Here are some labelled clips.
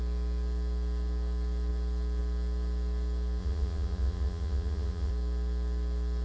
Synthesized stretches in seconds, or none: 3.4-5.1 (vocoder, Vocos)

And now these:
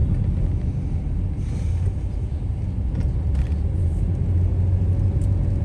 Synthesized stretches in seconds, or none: none

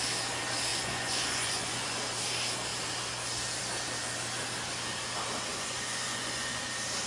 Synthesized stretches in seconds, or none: 0.7-2.0 (vocoder, Vocos); 5.5-6.6

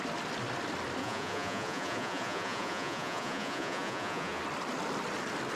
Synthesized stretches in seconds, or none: 1.0-4.4 (vocoder, Vocos)

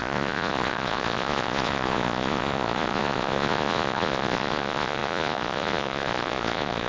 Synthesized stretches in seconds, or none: 0.0-6.9 (vocoder, Vocos)

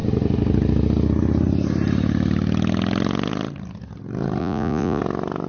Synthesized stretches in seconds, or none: 4.4-5.0 (vocoder, Vocos)

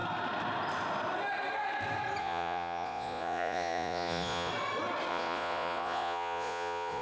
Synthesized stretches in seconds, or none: 2.2-4.5 (vocoder, Vocos); 5.1-7.0